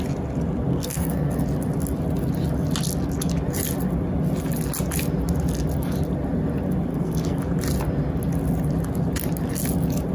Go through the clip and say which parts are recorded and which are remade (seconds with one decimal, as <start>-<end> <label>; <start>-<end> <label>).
0.0-0.7 recorded; 0.7-1.3 remade; 1.3-6.9 recorded; 6.9-7.4 remade; 7.4-10.1 recorded